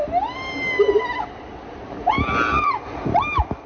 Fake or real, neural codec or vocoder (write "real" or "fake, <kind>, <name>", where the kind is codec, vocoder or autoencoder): real